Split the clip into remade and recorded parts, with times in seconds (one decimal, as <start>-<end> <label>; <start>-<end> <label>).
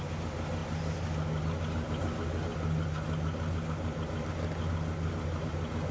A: 0.0-5.9 recorded